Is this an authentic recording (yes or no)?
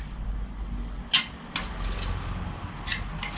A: yes